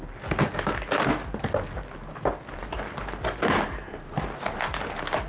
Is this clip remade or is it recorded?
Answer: recorded